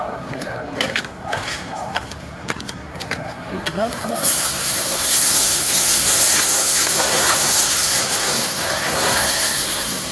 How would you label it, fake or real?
fake